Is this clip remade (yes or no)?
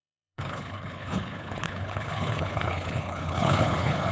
yes